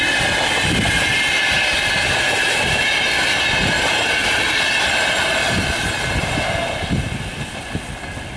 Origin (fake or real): real